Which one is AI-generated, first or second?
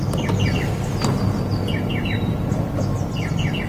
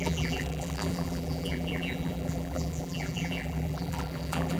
second